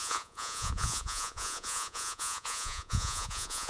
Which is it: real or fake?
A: fake